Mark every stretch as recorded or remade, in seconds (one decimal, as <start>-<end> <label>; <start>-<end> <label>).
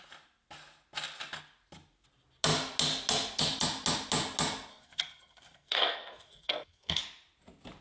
0.0-4.7 recorded; 4.7-7.0 remade; 7.0-7.8 recorded